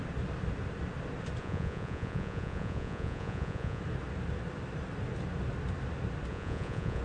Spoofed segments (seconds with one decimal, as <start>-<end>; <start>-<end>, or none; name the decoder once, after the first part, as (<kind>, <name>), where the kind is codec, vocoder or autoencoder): 1.4-3.8 (vocoder, Vocos); 6.3-7.0